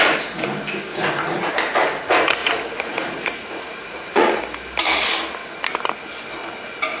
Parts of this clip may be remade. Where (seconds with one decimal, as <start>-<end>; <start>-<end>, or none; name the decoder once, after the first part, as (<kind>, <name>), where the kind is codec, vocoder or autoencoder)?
0.9-1.5 (vocoder, Vocos); 2.4-4.4